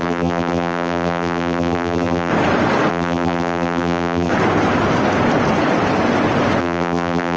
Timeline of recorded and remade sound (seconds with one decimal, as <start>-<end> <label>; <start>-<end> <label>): 0.0-2.3 remade; 2.3-2.9 recorded; 2.9-4.3 remade; 4.3-6.6 recorded; 6.6-7.4 remade

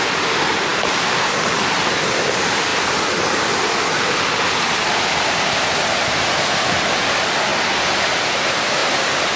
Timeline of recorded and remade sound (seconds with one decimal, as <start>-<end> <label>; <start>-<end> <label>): 0.0-8.8 recorded; 8.8-9.4 remade

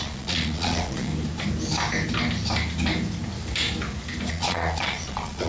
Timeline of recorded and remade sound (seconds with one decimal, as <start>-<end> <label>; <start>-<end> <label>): 0.0-1.1 remade; 1.1-4.3 recorded; 4.3-5.5 remade

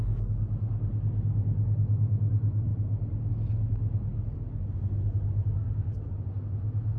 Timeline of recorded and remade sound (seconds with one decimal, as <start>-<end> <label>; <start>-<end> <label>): 0.0-7.0 recorded

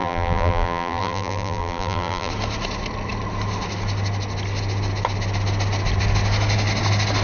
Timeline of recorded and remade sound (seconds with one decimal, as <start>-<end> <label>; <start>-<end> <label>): 0.0-2.3 remade; 2.3-7.2 recorded

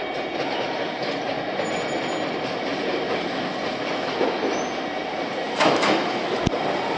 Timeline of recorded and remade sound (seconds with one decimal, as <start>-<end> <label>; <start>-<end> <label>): 0.0-5.4 recorded; 5.4-6.4 remade; 6.4-7.0 recorded